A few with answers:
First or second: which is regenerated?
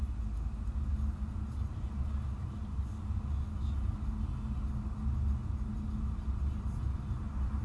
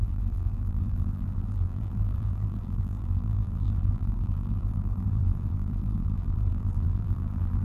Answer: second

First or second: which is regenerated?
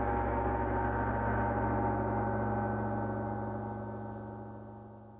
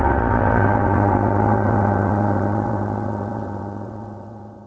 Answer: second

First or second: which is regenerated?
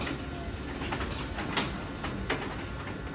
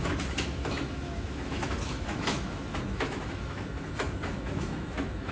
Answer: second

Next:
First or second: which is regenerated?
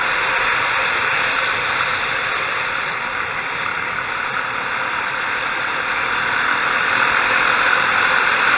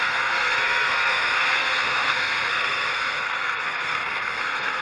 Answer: second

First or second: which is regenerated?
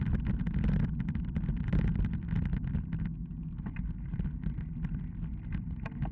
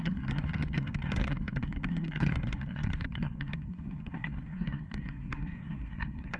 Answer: second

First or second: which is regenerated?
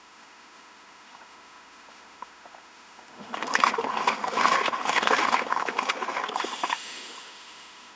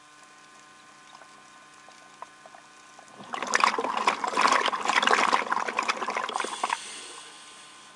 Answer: first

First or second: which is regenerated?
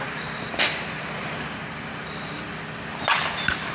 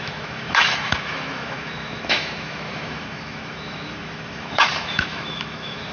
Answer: second